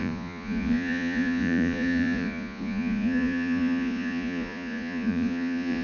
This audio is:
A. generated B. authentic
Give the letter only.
A